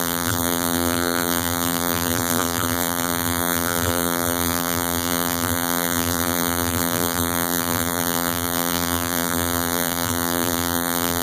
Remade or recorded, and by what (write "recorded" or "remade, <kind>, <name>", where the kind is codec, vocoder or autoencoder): remade, vocoder, BigVGAN v2